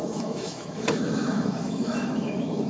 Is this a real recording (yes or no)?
no